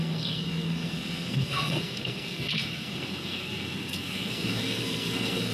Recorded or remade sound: remade